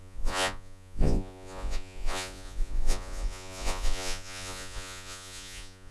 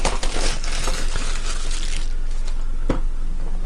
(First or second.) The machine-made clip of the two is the first